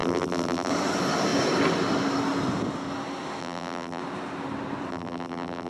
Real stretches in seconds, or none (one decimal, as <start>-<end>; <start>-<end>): 0.7-3.4; 4.0-4.9